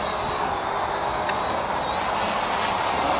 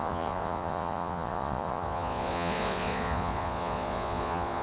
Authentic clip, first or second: first